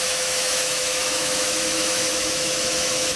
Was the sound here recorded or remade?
remade